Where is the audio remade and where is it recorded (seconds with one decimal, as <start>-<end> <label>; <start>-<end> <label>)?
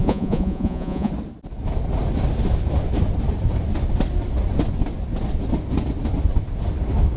0.0-1.1 remade; 1.1-7.2 recorded